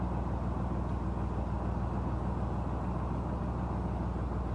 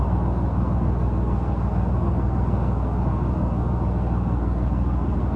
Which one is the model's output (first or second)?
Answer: second